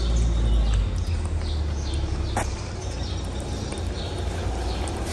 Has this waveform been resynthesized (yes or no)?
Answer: no